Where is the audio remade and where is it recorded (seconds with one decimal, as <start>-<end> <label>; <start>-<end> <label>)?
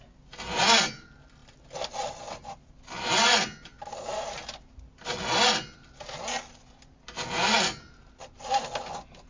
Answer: 0.0-9.3 recorded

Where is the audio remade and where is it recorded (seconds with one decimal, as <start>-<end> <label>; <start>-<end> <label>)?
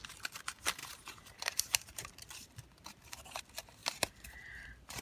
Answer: 0.0-0.8 recorded; 0.8-3.4 remade; 3.4-3.8 recorded; 3.8-5.0 remade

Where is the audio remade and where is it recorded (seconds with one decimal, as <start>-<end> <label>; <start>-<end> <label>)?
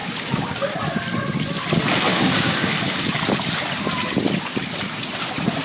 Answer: 0.0-0.8 remade; 0.8-2.1 recorded; 2.1-2.7 remade; 2.7-5.6 recorded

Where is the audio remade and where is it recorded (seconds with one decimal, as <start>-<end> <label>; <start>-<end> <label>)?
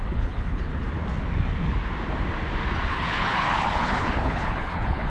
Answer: 0.0-0.7 remade; 0.7-2.9 recorded; 2.9-5.1 remade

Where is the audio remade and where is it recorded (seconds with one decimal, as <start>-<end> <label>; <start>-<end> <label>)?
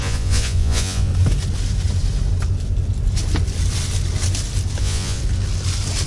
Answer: 0.0-1.1 remade; 1.1-4.8 recorded; 4.8-5.2 remade; 5.2-6.1 recorded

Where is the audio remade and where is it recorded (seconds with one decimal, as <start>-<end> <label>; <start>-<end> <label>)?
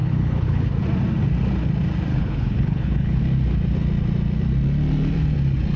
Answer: 0.0-0.7 remade; 0.7-2.1 recorded; 2.1-3.2 remade; 3.2-5.8 recorded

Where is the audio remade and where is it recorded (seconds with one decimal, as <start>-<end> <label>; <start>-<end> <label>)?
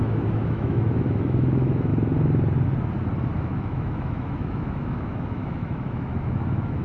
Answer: 0.0-1.9 remade; 1.9-3.4 recorded; 3.4-6.8 remade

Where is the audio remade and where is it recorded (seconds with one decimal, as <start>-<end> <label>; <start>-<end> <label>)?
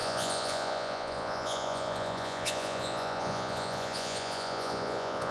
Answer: 0.0-5.3 remade